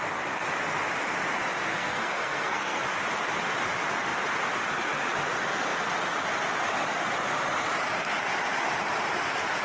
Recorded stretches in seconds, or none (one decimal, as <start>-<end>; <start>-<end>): 0.0-1.7; 2.8-9.6